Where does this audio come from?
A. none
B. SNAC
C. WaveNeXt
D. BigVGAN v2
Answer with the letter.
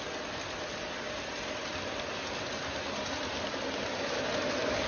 A